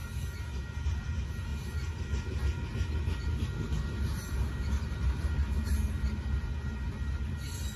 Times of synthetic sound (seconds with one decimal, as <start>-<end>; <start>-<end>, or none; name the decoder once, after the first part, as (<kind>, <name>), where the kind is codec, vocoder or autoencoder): none